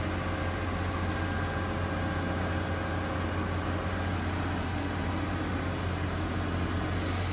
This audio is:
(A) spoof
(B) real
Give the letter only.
B